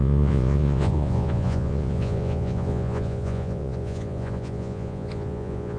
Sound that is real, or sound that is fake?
fake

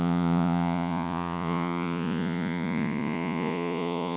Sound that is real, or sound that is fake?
fake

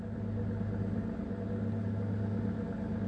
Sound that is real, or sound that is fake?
real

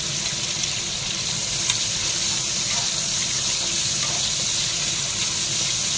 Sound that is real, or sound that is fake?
real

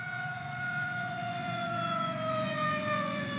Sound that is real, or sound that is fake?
fake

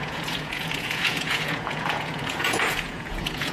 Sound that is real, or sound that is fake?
fake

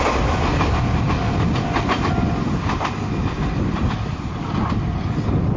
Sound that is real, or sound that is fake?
real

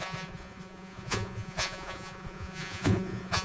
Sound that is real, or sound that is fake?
fake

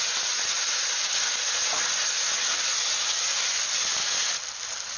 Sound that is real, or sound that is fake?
real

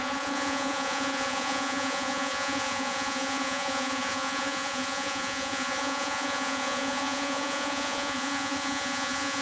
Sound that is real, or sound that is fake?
fake